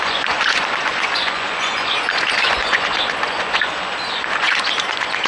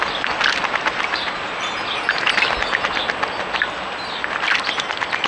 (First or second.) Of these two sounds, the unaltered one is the second